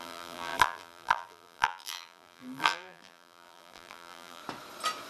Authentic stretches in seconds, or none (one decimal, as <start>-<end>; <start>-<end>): 4.4-5.1